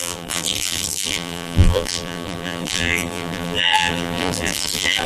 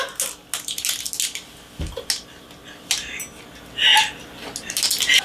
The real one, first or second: second